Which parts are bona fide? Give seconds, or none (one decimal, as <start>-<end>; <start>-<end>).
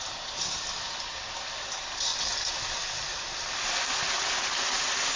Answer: 0.0-5.2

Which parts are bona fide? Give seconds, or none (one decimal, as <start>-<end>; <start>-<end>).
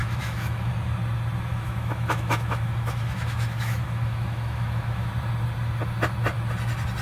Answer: 0.7-1.5; 5.1-7.0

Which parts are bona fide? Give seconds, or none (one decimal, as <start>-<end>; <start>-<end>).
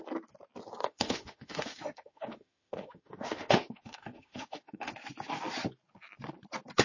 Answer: 0.0-0.8; 4.9-6.8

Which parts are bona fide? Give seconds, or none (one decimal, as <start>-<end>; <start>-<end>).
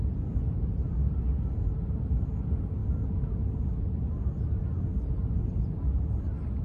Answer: 0.0-6.6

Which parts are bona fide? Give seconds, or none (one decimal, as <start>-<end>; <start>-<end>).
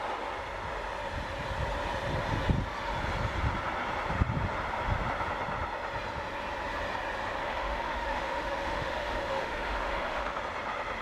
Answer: 0.0-7.4; 10.4-11.0